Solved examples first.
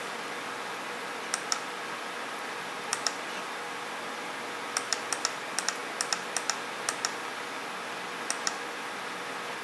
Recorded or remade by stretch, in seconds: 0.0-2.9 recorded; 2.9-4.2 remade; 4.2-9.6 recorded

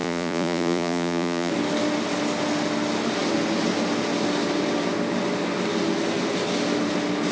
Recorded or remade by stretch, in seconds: 0.0-1.5 remade; 1.5-7.3 recorded

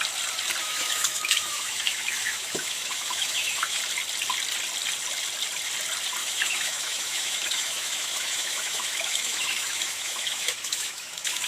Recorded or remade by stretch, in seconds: 0.0-0.6 recorded; 0.6-3.8 remade; 3.8-6.2 recorded; 6.2-11.5 remade

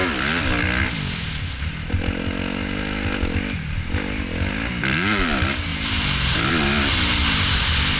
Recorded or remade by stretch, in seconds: 0.0-8.0 recorded

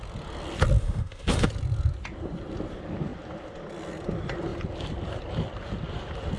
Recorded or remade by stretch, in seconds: 0.0-0.8 recorded; 0.8-1.5 remade; 1.5-6.4 recorded